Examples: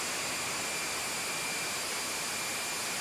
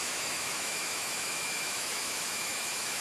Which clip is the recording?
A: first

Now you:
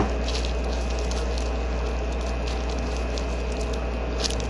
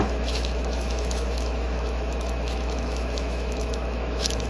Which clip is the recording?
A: first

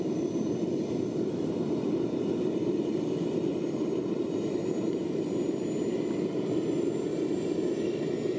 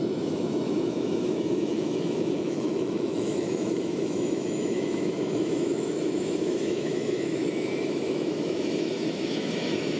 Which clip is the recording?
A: first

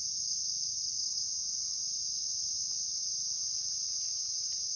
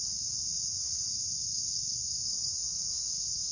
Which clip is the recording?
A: first